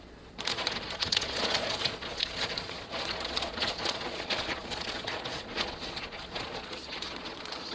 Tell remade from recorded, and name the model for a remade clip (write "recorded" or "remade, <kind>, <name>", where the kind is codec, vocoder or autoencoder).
remade, vocoder, Vocos